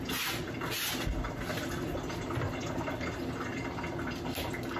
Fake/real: real